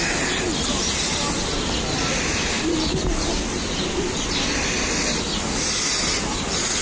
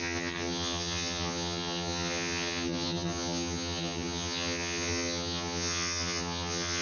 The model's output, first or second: second